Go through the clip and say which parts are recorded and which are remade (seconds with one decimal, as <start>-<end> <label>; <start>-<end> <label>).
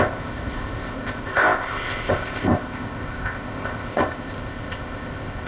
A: 0.0-5.5 remade